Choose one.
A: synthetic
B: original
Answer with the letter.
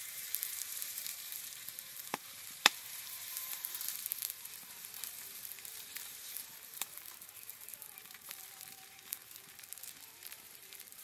A